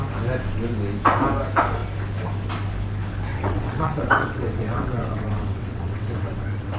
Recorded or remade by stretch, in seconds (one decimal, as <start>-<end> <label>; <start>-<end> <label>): 0.0-3.3 recorded; 3.3-6.8 remade